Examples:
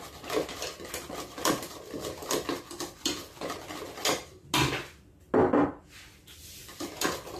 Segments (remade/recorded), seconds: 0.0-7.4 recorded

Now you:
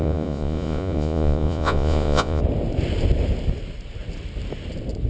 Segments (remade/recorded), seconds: 0.0-2.4 remade; 2.4-5.1 recorded

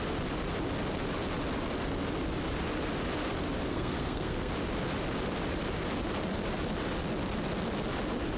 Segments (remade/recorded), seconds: 0.0-3.7 recorded; 3.7-4.5 remade; 4.5-8.4 recorded

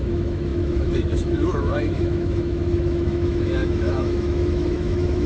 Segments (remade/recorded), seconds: 0.0-5.3 remade

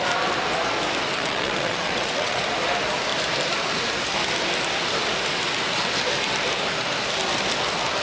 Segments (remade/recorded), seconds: 0.0-1.1 recorded; 1.1-2.4 remade; 2.4-8.0 recorded